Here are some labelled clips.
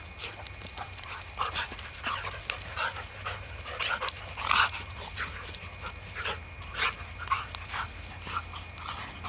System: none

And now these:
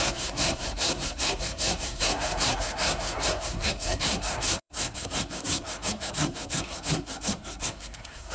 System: codec, SNAC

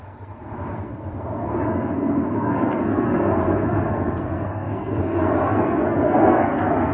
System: codec, SNAC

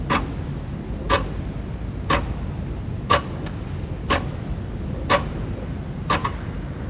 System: none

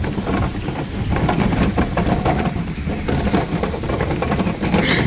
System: vocoder, BigVGAN v2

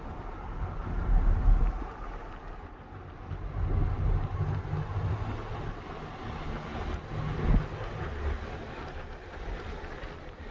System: none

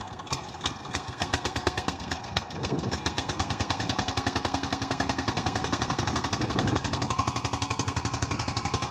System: codec, SNAC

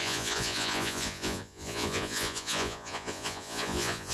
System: vocoder, Vocos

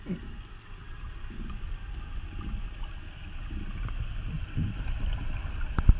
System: none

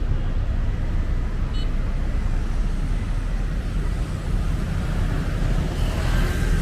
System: none